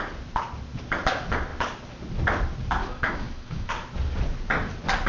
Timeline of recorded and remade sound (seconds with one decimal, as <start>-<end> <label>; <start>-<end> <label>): 0.0-2.8 recorded; 2.8-3.7 remade; 3.7-5.1 recorded